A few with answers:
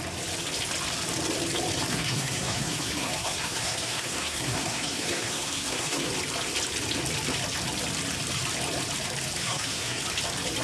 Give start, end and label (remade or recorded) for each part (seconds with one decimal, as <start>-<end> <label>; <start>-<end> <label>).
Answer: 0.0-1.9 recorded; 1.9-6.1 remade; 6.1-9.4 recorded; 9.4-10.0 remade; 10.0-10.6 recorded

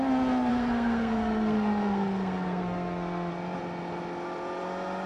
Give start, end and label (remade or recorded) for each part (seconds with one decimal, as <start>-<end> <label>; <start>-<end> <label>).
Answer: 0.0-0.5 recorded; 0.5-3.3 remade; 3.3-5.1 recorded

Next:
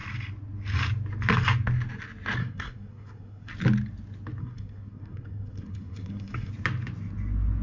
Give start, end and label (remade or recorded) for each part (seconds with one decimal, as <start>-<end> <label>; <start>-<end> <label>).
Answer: 0.0-2.4 recorded; 2.4-3.5 remade; 3.5-4.4 recorded; 4.4-6.5 remade; 6.5-7.6 recorded

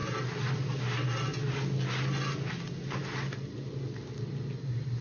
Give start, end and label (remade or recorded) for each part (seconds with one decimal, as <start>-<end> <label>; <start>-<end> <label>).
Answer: 0.0-5.0 recorded

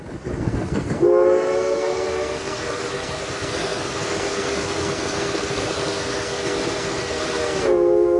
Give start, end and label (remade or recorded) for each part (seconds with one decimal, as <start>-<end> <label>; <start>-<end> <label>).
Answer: 0.0-8.2 remade

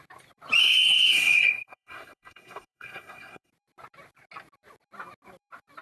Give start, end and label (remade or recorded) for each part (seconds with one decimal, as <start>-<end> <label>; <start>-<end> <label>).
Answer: 0.0-0.6 recorded; 0.6-3.5 remade; 3.5-5.8 recorded

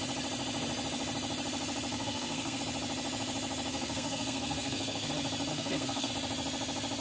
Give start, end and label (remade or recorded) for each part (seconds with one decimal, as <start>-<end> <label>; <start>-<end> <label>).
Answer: 0.0-1.9 recorded; 1.9-2.6 remade; 2.6-3.7 recorded; 3.7-5.1 remade; 5.1-5.5 recorded; 5.5-6.1 remade; 6.1-7.0 recorded

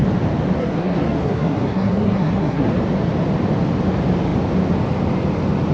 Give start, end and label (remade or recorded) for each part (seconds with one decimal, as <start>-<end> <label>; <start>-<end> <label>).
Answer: 0.0-0.6 recorded; 0.6-2.7 remade; 2.7-5.7 recorded